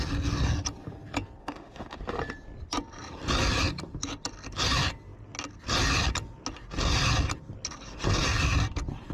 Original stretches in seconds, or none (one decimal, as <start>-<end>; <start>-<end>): 0.0-1.4; 2.0-9.1